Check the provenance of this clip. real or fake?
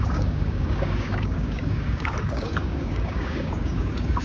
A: fake